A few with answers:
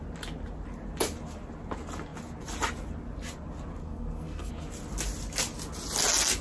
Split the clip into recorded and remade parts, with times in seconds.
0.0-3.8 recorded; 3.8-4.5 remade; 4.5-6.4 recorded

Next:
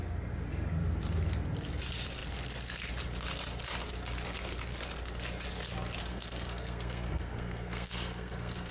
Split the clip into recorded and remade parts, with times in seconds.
0.0-6.1 recorded; 6.1-8.7 remade

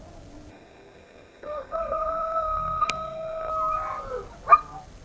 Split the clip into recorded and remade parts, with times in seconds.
0.0-0.5 recorded; 0.5-3.5 remade; 3.5-5.0 recorded